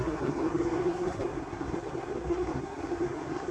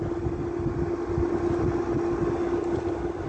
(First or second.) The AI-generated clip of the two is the first